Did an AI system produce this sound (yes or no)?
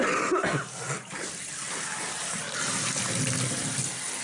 no